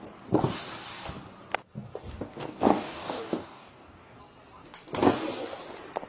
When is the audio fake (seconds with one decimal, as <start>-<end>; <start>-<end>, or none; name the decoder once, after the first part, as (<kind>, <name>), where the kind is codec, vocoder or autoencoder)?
2.1-4.2 (codec, DAC)